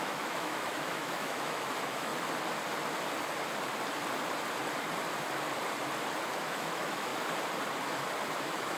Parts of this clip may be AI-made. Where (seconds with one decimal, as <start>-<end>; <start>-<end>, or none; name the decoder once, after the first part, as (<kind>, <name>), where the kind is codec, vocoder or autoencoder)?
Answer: 0.0-2.1 (autoencoder, DAC-VAE); 6.4-7.1; 8.4-8.8